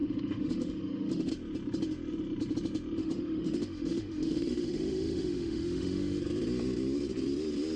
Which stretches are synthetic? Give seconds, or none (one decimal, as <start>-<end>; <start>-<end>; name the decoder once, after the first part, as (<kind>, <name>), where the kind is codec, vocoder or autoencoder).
0.0-1.3 (autoencoder, DAC-VAE); 3.0-6.2